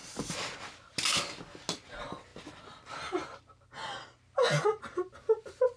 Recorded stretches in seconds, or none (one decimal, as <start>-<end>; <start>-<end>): 0.0-5.8